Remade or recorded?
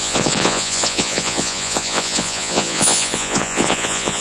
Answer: remade